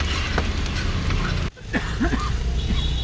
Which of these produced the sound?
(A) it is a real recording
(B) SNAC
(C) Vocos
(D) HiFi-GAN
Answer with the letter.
A